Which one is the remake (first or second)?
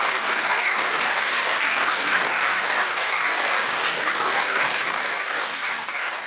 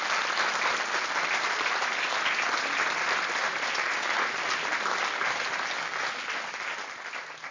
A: first